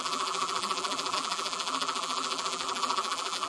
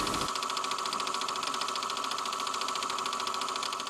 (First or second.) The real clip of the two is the second